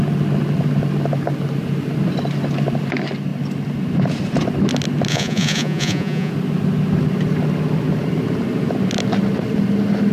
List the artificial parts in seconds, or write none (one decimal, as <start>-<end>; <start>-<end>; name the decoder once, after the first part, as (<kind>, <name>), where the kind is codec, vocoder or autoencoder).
5.1-6.3 (vocoder, Vocos)